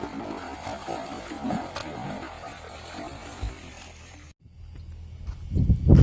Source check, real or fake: real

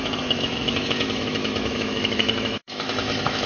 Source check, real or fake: fake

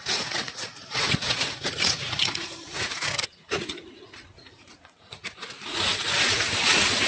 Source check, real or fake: fake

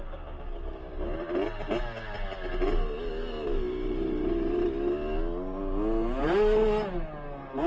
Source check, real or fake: real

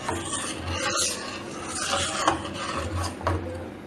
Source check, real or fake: real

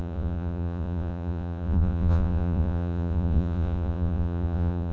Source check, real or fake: fake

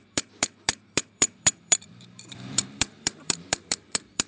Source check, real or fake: fake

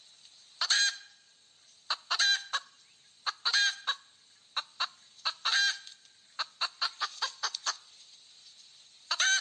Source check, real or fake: real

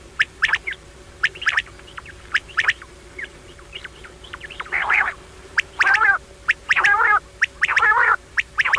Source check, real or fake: fake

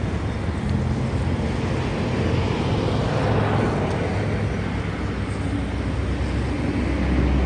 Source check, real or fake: real